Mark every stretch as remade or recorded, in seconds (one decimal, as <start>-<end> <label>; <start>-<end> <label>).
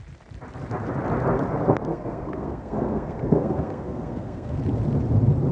0.0-1.9 recorded; 1.9-4.6 remade; 4.6-5.5 recorded